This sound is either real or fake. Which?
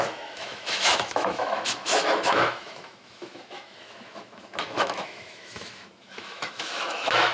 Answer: fake